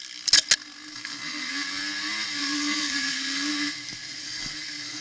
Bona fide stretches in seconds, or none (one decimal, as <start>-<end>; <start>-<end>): 0.0-0.9; 1.5-2.3; 3.5-4.2